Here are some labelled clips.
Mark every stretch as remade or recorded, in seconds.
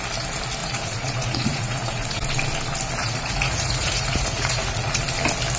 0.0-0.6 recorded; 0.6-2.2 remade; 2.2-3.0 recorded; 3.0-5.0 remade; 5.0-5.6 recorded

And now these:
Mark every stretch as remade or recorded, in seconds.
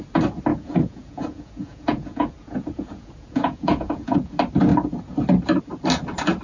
0.0-0.5 recorded; 0.5-4.3 remade; 4.3-6.4 recorded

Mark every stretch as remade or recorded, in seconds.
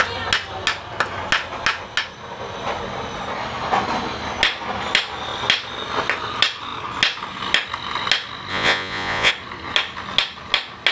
0.0-8.5 recorded; 8.5-9.3 remade; 9.3-10.9 recorded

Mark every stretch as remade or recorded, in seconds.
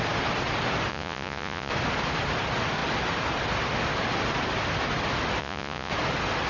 0.0-0.9 recorded; 0.9-1.7 remade; 1.7-5.4 recorded; 5.4-5.9 remade; 5.9-6.5 recorded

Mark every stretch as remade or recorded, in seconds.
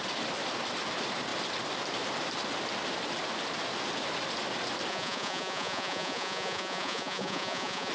0.0-4.9 recorded; 4.9-7.9 remade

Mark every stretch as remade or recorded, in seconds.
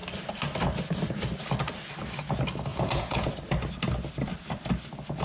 0.0-2.7 recorded; 2.7-3.3 remade; 3.3-5.2 recorded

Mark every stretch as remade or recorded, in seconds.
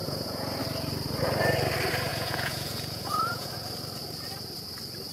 0.0-0.6 remade; 0.6-2.1 recorded; 2.1-3.5 remade; 3.5-5.1 recorded